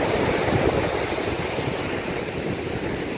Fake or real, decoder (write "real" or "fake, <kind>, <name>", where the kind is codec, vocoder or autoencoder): fake, vocoder, BigVGAN v2